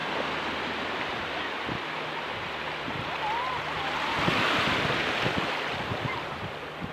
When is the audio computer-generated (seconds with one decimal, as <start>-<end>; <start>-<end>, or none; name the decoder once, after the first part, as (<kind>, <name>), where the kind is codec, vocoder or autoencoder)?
none